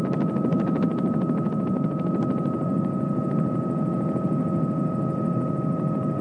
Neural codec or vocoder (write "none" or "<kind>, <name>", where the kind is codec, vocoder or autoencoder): none